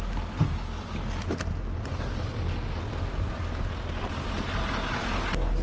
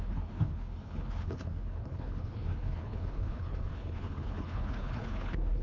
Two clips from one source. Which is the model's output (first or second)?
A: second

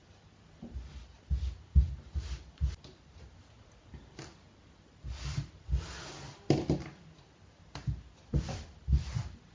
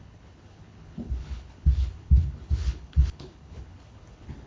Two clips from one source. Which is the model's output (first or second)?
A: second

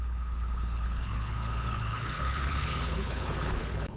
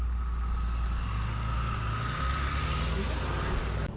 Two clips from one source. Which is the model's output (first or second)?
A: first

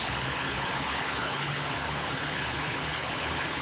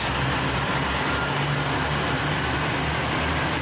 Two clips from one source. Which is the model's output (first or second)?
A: first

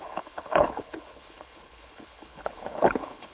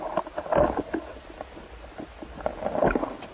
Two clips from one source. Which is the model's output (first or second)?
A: first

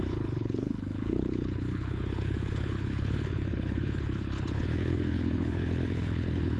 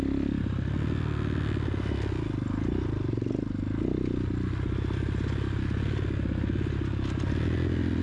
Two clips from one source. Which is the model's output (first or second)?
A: first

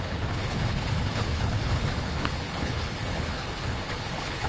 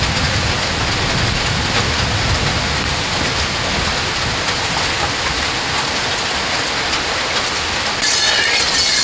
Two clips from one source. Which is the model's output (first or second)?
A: first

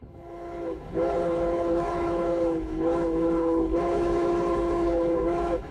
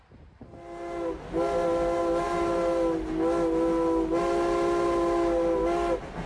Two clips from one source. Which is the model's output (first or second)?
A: first